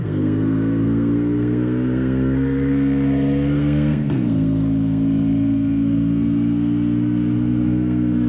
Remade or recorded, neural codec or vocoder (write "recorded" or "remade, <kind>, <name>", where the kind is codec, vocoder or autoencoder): remade, codec, SNAC